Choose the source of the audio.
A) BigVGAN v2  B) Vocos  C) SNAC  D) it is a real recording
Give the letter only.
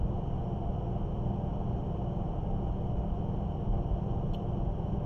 D